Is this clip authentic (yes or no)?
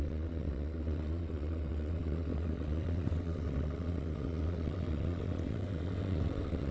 no